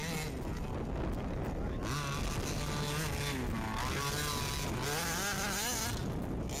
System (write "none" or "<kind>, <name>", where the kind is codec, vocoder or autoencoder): none